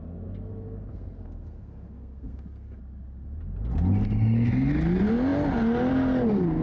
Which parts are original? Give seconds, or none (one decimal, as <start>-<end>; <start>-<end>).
0.0-0.9; 2.8-6.6